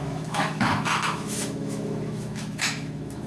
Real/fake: fake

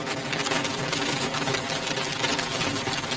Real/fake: real